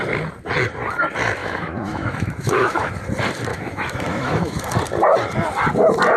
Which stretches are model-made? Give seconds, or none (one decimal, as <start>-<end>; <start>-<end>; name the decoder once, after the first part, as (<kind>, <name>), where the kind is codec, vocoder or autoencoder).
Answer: 1.4-2.9 (autoencoder, DAC-VAE); 3.5-4.6